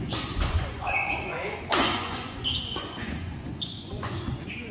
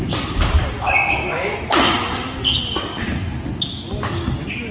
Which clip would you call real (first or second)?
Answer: second